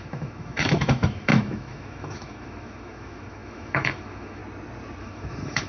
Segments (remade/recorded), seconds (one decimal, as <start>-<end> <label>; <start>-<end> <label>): 0.0-4.4 remade; 4.4-5.0 recorded; 5.0-5.7 remade